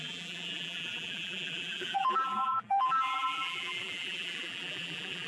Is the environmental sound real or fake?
fake